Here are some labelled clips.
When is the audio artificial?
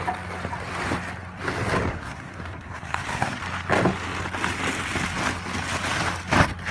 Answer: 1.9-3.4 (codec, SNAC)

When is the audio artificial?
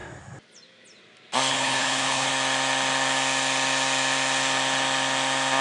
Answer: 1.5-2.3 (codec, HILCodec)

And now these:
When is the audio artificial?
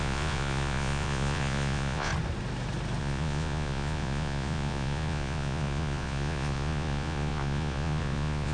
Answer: 0.0-2.1 (vocoder, Vocos); 3.0-8.5